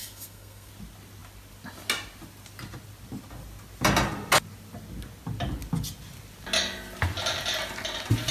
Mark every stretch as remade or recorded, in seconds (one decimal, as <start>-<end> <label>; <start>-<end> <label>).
0.0-0.7 remade; 0.7-8.3 recorded